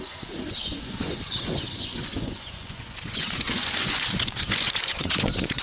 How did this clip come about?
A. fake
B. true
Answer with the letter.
A